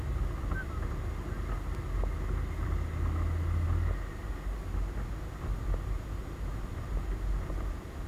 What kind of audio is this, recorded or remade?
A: recorded